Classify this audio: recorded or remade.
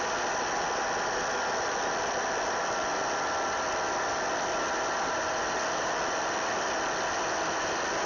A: recorded